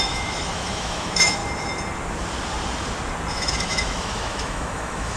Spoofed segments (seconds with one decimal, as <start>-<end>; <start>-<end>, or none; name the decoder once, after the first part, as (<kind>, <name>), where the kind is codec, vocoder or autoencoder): 0.0-1.4 (autoencoder, DAC-VAE); 3.3-5.2